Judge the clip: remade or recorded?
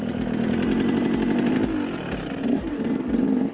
recorded